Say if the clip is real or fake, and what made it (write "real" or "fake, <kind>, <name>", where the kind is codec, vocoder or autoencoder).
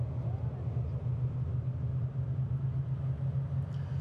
real